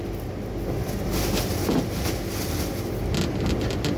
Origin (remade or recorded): recorded